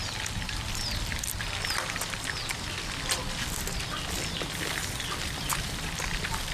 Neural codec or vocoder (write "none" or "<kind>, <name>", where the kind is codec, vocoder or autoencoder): none